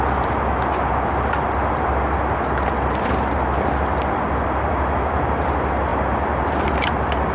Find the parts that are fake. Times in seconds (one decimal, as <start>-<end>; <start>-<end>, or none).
5.9-6.7